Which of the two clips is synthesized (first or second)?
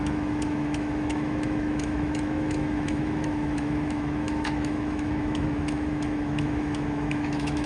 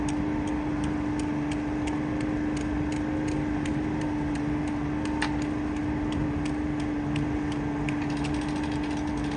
first